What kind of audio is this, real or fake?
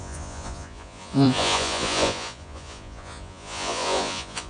fake